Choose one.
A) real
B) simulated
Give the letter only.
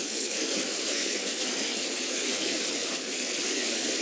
B